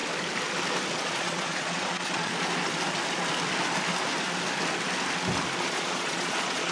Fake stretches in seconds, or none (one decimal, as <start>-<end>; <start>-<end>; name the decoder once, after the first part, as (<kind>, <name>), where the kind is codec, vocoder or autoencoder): 0.9-2.3 (vocoder, Vocos); 5.6-6.7